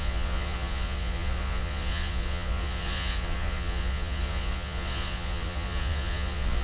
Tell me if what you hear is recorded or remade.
remade